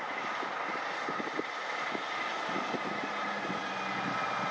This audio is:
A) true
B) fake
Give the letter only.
A